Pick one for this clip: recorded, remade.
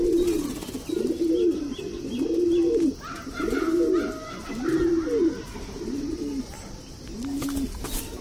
recorded